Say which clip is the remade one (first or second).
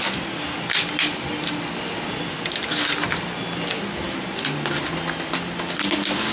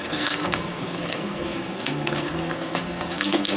second